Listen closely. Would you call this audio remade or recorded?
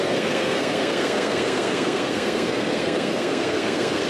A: remade